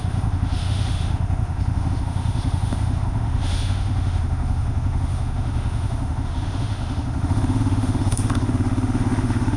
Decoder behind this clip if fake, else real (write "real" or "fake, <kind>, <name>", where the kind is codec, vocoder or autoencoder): fake, autoencoder, DAC-VAE